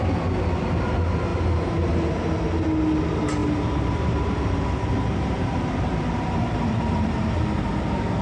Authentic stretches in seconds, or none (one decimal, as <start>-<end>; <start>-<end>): 0.0-3.4; 7.3-8.2